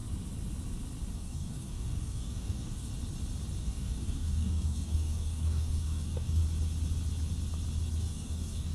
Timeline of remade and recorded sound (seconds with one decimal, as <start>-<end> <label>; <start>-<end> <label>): 0.0-1.1 recorded; 1.1-2.9 remade; 2.9-3.6 recorded; 3.6-6.4 remade; 6.4-8.0 recorded; 8.0-8.7 remade